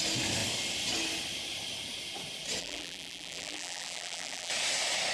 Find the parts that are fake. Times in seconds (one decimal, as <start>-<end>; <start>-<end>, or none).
2.6-4.5